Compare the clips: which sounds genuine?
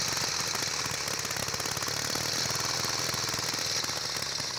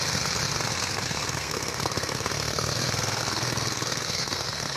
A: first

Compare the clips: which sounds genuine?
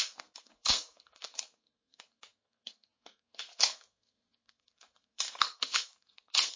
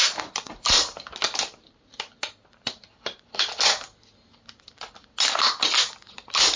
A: second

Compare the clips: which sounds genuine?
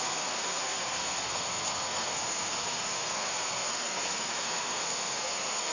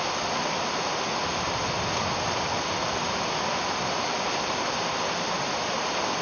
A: second